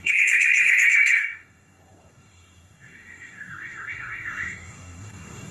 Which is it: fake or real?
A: fake